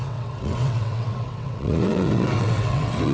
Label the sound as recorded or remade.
remade